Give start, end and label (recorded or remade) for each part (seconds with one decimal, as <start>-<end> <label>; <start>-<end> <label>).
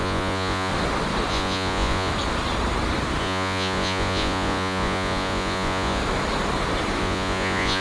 0.0-0.7 remade; 0.7-1.3 recorded; 1.3-2.1 remade; 2.1-3.2 recorded; 3.2-6.0 remade; 6.0-7.0 recorded; 7.0-7.8 remade